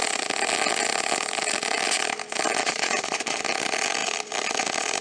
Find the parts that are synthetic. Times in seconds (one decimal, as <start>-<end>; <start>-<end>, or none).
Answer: 2.6-3.4